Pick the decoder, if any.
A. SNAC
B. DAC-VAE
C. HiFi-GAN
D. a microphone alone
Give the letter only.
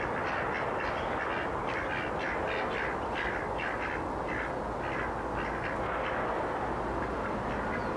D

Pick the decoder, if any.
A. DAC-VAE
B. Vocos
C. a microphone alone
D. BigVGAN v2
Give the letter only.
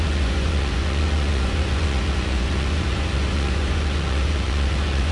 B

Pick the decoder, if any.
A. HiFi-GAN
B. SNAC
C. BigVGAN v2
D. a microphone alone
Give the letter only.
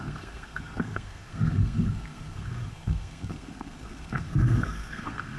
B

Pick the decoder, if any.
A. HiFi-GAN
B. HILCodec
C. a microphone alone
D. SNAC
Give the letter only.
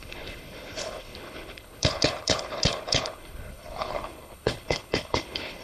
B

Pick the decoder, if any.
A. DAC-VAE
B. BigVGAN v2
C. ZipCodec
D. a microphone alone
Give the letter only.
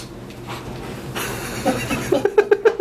D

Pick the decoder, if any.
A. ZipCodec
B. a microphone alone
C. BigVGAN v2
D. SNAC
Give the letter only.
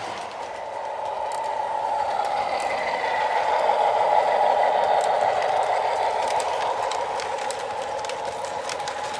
C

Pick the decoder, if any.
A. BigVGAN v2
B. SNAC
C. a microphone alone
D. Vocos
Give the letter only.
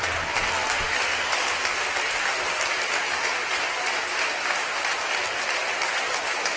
C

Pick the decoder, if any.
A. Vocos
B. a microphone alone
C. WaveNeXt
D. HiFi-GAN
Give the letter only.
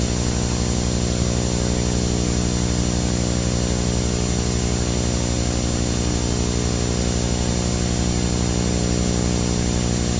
B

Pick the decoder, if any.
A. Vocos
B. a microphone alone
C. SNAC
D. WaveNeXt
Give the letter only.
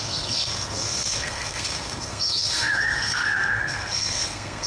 C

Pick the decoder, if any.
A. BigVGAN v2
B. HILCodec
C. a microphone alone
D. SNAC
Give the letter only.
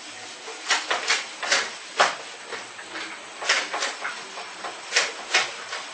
C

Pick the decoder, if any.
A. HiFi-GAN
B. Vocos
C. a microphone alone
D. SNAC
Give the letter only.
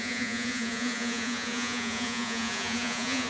B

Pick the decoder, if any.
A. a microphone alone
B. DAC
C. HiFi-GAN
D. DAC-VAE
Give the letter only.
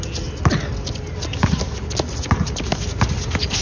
A